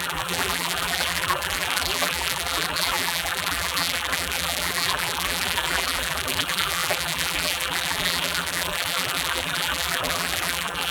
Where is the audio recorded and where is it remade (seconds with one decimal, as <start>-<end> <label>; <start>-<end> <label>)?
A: 0.0-10.9 remade